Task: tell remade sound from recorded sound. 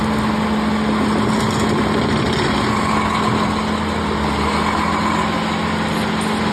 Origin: recorded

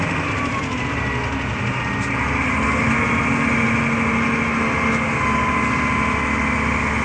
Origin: recorded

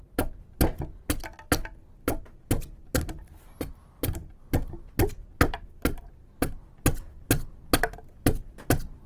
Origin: recorded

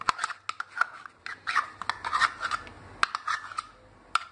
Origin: recorded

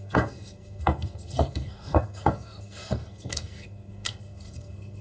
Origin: remade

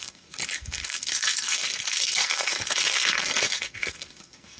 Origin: remade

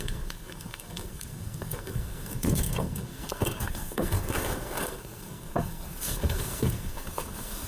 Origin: remade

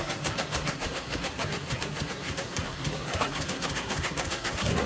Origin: remade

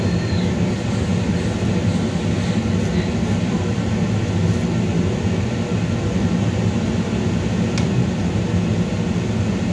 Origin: recorded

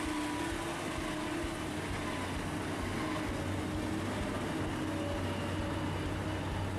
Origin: recorded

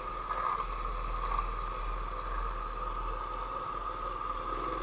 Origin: recorded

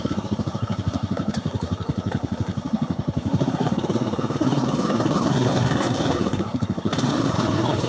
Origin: remade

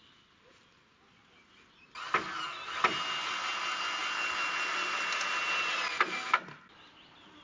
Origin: recorded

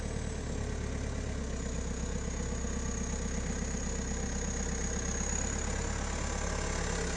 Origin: recorded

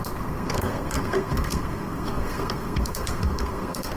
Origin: remade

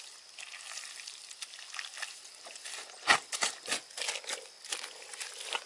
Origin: recorded